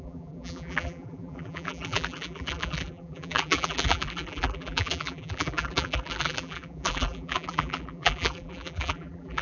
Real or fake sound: fake